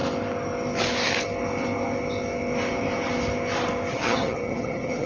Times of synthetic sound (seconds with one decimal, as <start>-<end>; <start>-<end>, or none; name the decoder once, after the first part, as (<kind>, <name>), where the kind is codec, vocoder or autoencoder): 3.9-5.1 (vocoder, HiFi-GAN)